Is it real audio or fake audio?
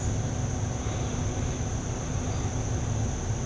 real